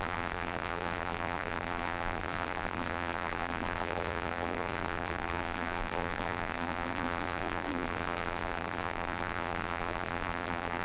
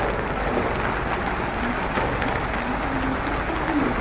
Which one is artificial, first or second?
first